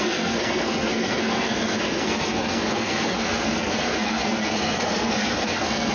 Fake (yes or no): yes